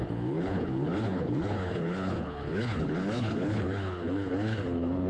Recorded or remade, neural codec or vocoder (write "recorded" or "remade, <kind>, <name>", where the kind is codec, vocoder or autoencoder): remade, codec, HILCodec